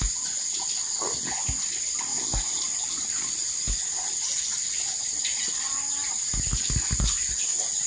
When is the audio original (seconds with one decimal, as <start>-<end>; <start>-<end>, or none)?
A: 0.0-7.9